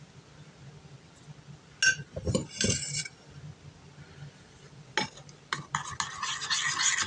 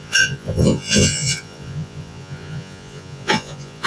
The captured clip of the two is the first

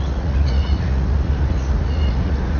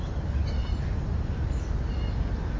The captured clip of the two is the second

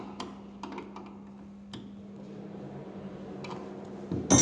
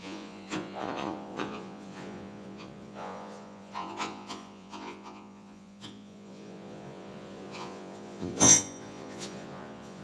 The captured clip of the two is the first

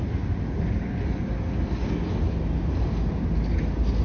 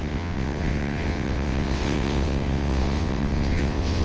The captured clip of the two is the first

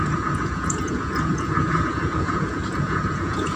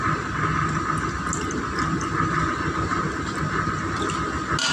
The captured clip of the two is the second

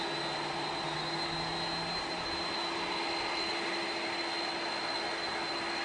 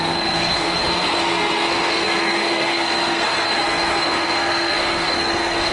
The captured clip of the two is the first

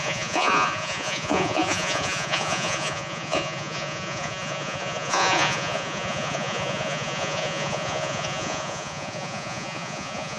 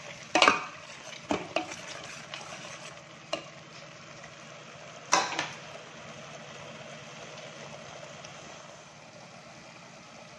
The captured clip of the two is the second